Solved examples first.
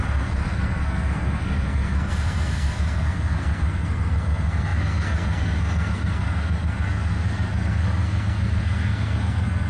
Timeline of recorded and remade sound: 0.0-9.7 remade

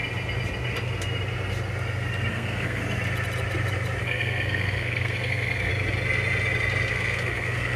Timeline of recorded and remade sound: 0.0-2.3 recorded; 2.3-2.8 remade; 2.8-4.0 recorded; 4.0-5.7 remade; 5.7-6.9 recorded; 6.9-7.8 remade

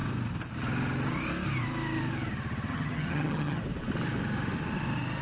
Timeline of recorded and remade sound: 0.0-2.7 recorded; 2.7-3.6 remade; 3.6-5.2 recorded

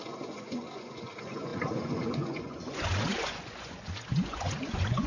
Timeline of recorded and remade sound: 0.0-5.1 remade

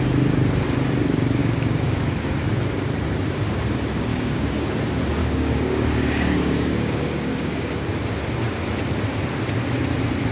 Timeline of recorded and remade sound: 0.0-1.4 recorded; 1.4-2.0 remade; 2.0-4.1 recorded; 4.1-4.7 remade; 4.7-5.2 recorded; 5.2-7.7 remade; 7.7-10.3 recorded